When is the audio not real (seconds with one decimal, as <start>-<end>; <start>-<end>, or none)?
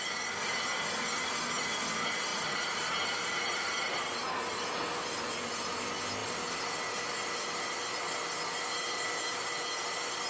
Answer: 2.3-4.2; 6.2-7.0